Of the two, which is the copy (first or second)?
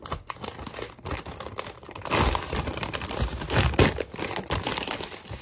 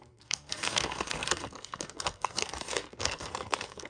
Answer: second